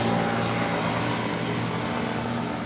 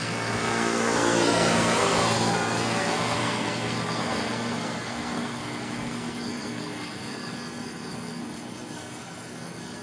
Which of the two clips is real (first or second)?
first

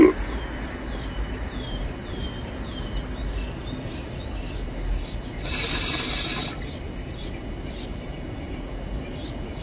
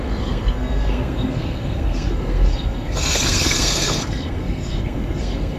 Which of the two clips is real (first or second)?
first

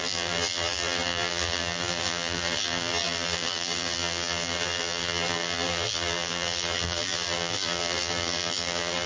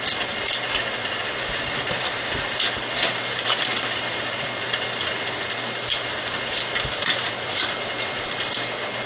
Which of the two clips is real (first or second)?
second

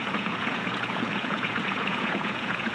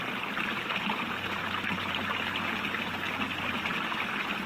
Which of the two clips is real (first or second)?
second